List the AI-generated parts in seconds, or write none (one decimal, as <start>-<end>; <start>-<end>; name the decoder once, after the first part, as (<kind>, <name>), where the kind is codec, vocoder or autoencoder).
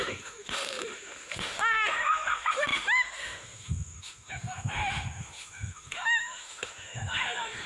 0.0-7.7 (autoencoder, DAC-VAE)